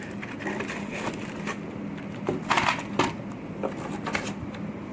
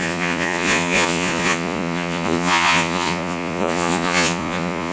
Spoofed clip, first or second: second